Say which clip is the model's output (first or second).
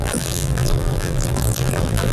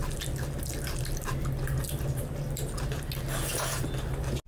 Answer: first